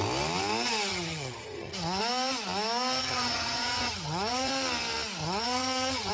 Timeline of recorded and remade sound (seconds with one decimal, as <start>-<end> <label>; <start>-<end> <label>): 0.0-0.9 recorded; 0.9-2.0 remade; 2.0-3.0 recorded; 3.0-4.5 remade; 4.5-5.2 recorded; 5.2-6.1 remade